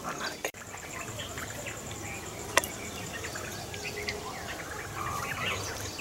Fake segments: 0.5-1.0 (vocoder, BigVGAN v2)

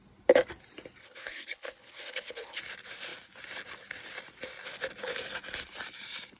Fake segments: 1.0-2.6 (codec, HILCodec)

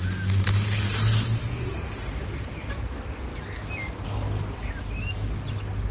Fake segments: none

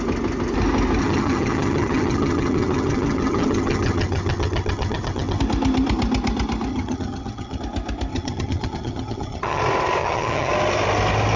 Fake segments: 1.0-5.4 (vocoder, HiFi-GAN); 6.7-7.6; 8.1-9.6; 10.0-10.5

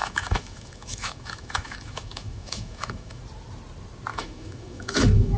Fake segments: 0.0-3.2 (autoencoder, DAC-VAE); 4.1-5.4

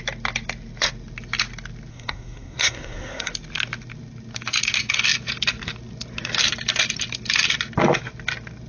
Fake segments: 1.9-3.3 (codec, SNAC)

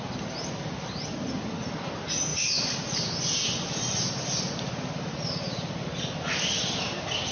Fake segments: none